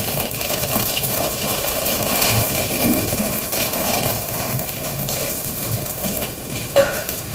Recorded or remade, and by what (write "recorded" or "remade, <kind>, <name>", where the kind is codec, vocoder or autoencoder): remade, autoencoder, DAC-VAE